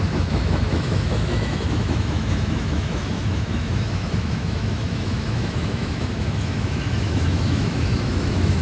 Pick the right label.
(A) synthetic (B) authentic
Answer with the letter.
A